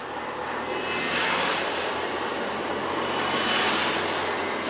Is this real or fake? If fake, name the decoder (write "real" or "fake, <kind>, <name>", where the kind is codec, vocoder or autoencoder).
real